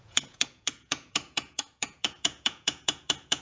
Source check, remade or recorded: remade